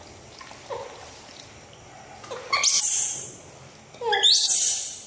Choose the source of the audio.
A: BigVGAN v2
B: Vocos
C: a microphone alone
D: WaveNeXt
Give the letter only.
C